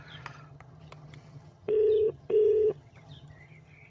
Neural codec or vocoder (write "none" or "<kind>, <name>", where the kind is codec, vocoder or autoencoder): vocoder, HiFi-GAN